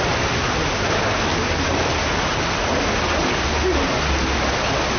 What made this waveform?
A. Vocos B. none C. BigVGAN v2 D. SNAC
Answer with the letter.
B